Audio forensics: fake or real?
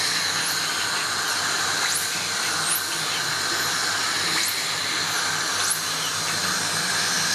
real